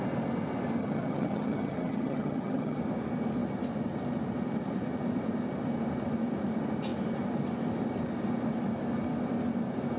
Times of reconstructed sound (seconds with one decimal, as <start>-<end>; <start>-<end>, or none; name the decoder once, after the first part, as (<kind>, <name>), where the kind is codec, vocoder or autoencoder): 0.8-2.8 (vocoder, HiFi-GAN)